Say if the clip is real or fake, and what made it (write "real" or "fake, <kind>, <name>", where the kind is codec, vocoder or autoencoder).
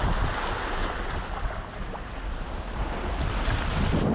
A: real